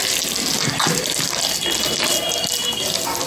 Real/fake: real